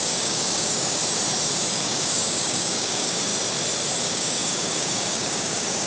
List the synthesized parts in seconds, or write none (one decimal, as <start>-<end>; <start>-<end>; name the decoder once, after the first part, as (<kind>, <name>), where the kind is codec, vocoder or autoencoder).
0.0-1.0 (codec, DAC); 1.7-3.3; 4.0-5.9